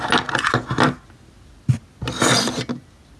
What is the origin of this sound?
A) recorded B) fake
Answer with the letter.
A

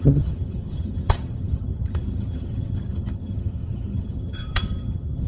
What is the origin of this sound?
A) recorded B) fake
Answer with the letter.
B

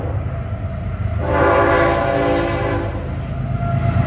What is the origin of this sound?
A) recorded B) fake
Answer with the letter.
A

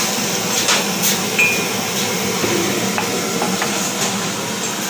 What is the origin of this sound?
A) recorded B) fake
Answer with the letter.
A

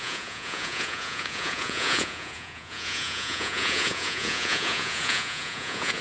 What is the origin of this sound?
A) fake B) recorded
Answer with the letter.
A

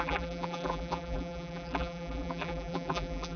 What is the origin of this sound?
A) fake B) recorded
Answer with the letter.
A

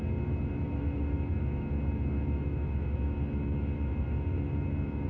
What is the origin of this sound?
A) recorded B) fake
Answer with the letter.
B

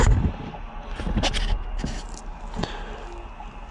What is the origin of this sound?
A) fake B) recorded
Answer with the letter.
B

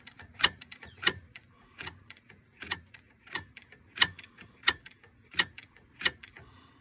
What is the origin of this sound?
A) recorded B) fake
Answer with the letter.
B